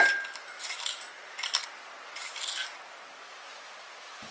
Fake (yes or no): no